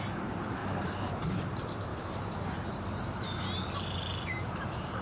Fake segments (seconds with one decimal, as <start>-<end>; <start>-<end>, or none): 0.0-5.0